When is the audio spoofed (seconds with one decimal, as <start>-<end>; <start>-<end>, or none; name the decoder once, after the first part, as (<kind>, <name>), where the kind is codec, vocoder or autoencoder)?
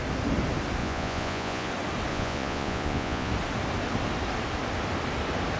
0.8-1.7 (vocoder, Vocos); 2.1-3.3